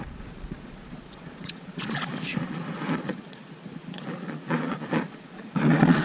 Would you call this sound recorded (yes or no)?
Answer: no